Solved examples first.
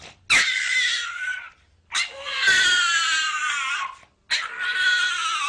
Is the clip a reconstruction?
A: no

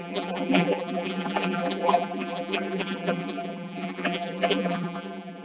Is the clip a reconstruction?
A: yes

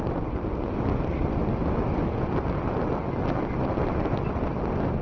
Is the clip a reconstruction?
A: no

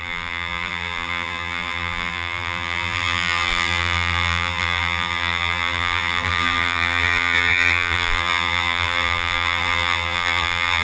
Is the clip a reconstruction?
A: yes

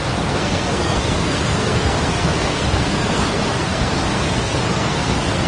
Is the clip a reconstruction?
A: yes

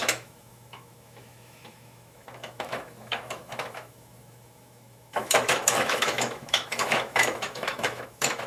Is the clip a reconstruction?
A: yes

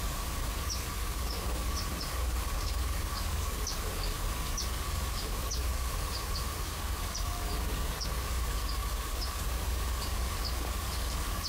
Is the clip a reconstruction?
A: yes